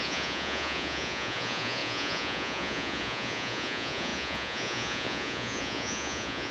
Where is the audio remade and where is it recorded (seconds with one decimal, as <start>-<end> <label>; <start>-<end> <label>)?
0.0-6.5 remade